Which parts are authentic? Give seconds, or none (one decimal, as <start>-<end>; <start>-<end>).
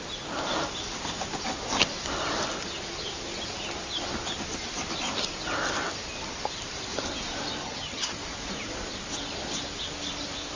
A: 0.0-7.6; 8.2-10.6